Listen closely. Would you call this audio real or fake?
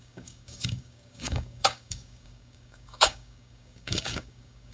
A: fake